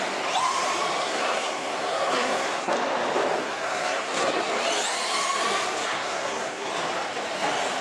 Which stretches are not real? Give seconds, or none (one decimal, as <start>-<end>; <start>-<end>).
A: 1.0-2.7; 3.4-4.5; 5.9-6.7